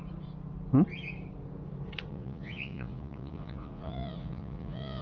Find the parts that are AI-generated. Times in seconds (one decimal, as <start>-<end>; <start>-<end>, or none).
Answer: 2.1-5.0